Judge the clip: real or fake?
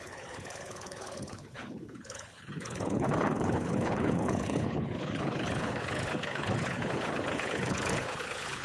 fake